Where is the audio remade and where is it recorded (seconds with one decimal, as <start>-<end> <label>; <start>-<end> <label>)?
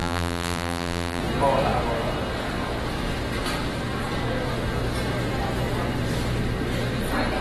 0.0-1.2 remade; 1.2-7.4 recorded